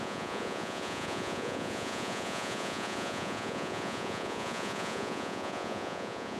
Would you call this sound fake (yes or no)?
yes